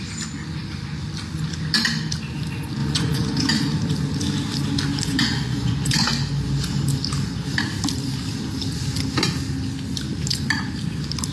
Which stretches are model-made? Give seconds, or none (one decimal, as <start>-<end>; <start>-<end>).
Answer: 2.8-3.5; 5.1-6.1